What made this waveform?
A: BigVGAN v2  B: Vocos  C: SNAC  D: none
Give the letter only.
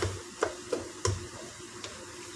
D